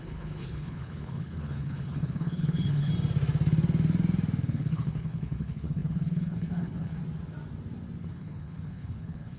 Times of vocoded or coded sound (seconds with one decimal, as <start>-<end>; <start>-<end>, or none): 0.0-2.9; 4.4-7.0; 8.0-9.4